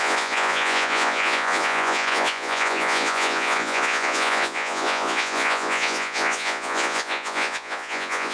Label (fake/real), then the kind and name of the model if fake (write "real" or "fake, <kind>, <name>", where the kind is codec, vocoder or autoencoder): fake, vocoder, Vocos